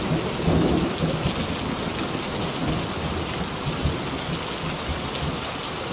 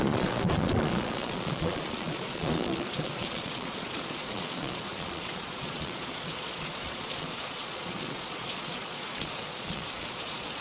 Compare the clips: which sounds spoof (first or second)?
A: second